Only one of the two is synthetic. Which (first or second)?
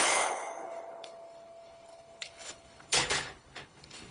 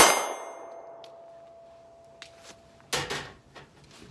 first